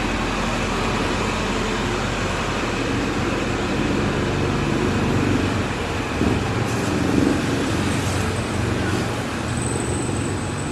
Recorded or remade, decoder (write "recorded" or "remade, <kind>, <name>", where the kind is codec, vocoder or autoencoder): recorded